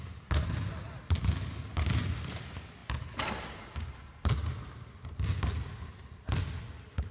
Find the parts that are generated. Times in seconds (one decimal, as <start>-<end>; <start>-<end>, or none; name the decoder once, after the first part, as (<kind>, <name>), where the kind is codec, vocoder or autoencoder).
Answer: none